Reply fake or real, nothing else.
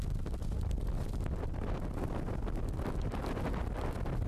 real